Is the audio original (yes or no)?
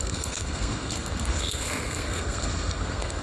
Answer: no